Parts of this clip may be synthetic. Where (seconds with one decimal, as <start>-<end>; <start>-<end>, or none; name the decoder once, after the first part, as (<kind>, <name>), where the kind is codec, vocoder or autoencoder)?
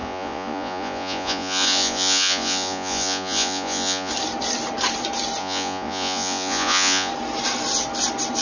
0.0-4.1 (vocoder, Vocos); 5.4-7.1